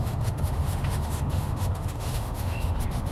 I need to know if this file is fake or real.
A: fake